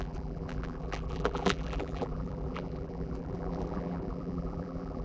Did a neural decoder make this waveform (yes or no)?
yes